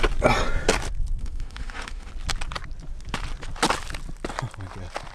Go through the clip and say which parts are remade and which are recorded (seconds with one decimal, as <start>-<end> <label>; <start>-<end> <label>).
0.0-1.2 recorded; 1.2-2.1 remade; 2.1-5.1 recorded